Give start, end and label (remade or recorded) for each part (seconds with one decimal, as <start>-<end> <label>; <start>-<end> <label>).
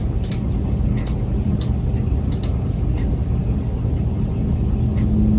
0.0-5.4 recorded